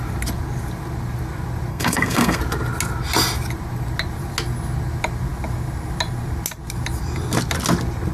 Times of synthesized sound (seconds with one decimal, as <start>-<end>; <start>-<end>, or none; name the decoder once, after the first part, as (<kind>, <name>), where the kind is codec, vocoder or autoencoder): 1.7-2.4 (codec, SNAC)